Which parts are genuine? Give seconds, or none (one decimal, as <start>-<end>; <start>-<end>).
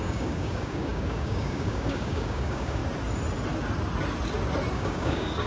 2.8-4.7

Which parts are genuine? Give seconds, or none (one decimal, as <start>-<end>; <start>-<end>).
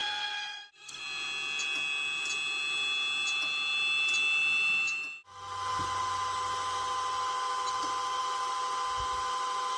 1.0-9.8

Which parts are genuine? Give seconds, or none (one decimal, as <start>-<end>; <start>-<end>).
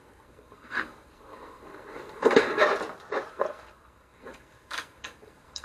2.6-3.3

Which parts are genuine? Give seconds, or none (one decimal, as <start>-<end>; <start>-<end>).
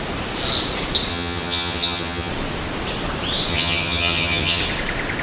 0.0-1.1; 2.3-3.5; 4.6-5.2